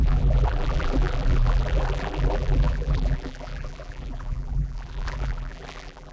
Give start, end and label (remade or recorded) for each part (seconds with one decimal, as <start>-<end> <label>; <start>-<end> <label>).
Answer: 0.0-6.1 remade